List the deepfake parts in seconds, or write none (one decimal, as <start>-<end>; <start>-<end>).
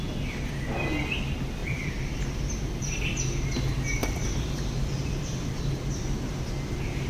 1.6-2.2; 4.0-5.5